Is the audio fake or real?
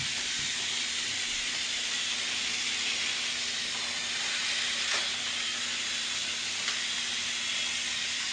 real